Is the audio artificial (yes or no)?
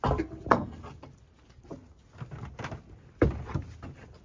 no